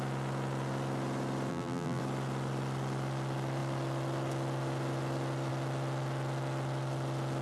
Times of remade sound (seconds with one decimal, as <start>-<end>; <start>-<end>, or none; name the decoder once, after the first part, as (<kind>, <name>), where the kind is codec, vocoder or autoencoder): 1.5-2.0 (vocoder, BigVGAN v2)